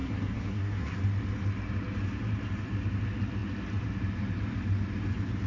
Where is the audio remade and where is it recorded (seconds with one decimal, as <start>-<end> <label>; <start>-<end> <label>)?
0.0-1.0 remade; 1.0-5.5 recorded

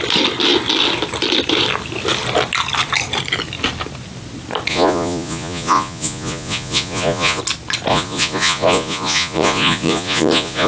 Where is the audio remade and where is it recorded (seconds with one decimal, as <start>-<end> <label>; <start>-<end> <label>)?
0.0-4.7 recorded; 4.7-7.4 remade; 7.4-7.9 recorded; 7.9-10.7 remade

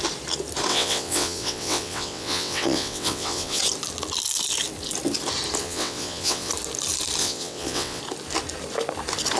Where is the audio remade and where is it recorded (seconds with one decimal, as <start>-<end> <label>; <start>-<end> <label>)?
0.0-0.7 recorded; 0.7-3.6 remade; 3.6-5.6 recorded; 5.6-6.5 remade; 6.5-7.2 recorded; 7.2-8.0 remade; 8.0-9.4 recorded

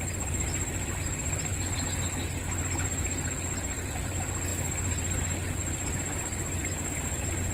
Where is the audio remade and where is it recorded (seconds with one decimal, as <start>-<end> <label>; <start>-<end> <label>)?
0.0-7.5 recorded

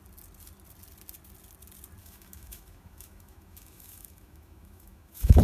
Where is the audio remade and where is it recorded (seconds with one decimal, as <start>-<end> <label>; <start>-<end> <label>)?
0.0-2.0 recorded; 2.0-5.4 remade